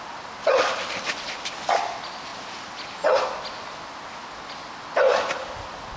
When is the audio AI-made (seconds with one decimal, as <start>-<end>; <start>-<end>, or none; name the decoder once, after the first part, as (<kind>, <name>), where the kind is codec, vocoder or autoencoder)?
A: none